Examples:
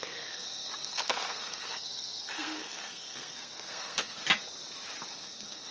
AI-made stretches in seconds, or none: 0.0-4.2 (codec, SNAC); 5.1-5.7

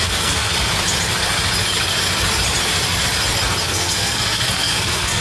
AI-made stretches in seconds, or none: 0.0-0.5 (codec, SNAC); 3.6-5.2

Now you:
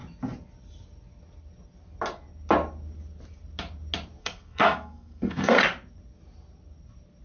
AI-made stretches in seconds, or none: 4.2-5.6 (codec, SNAC)

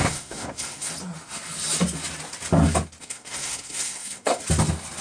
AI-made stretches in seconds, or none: 0.0-0.9 (codec, SNAC); 3.0-4.4